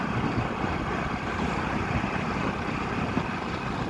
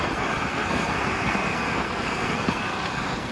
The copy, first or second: second